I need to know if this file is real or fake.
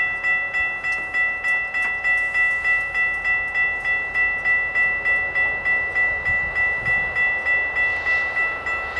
real